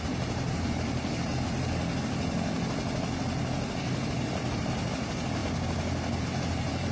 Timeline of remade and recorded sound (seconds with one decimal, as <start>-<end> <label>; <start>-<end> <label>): 0.0-1.3 remade; 1.3-4.1 recorded; 4.1-5.4 remade; 5.4-6.2 recorded; 6.2-6.9 remade